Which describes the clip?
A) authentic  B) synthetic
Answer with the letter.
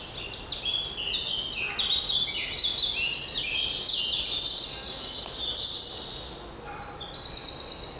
A